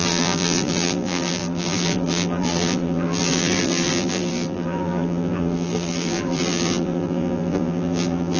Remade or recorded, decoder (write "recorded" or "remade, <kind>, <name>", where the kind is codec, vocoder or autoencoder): remade, vocoder, BigVGAN v2